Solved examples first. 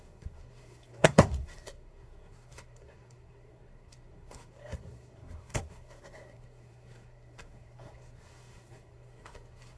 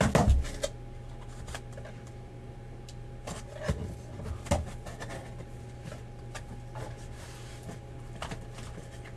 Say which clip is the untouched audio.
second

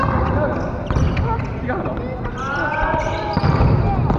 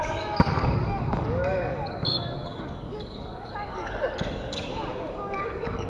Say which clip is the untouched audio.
first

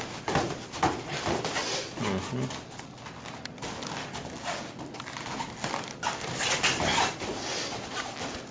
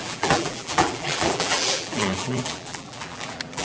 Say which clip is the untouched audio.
first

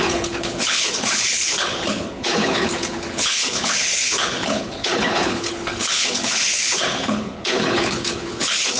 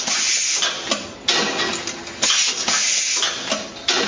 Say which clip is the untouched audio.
second